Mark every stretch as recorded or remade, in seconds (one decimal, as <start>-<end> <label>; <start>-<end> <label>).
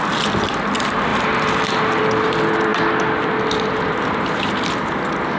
0.0-5.4 recorded